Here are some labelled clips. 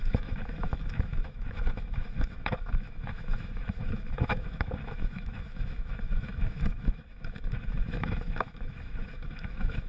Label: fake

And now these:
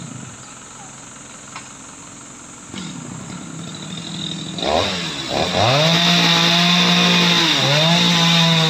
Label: real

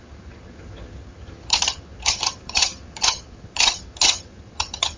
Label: fake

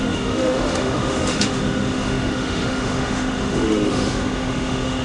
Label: fake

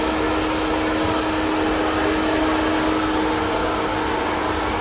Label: real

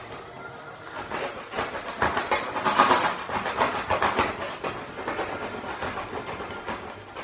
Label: real